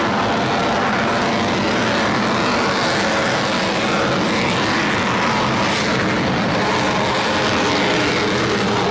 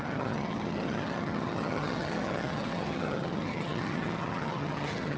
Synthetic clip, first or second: second